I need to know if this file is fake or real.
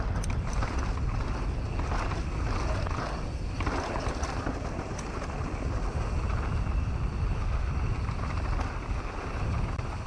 real